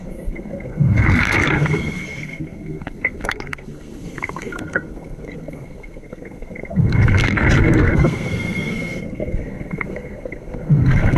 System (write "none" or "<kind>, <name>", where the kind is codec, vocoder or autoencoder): codec, SNAC